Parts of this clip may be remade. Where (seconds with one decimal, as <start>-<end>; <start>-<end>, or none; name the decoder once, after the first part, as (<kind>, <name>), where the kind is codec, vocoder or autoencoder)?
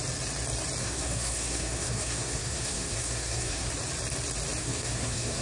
0.8-3.7 (codec, SNAC); 4.6-5.4